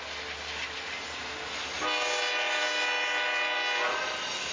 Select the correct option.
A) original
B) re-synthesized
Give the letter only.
A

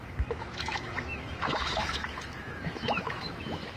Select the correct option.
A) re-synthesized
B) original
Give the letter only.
A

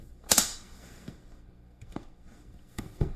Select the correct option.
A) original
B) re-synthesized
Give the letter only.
B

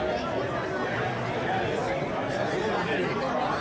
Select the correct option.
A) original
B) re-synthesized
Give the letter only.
A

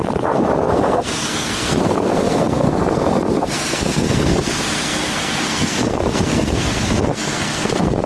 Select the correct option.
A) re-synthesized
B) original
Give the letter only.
A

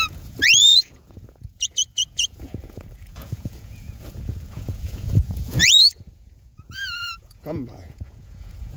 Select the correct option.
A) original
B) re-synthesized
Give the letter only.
B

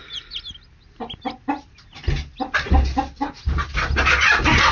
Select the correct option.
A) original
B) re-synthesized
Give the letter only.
A